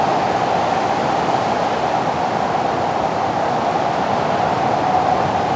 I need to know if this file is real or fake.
real